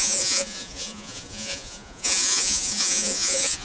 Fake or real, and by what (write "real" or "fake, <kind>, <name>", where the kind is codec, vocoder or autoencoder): fake, vocoder, Vocos